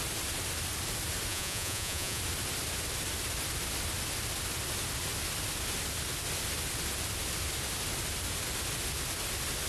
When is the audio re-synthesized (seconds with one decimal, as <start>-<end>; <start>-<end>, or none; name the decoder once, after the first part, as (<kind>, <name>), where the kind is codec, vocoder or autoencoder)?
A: 1.3-2.2 (vocoder, Vocos)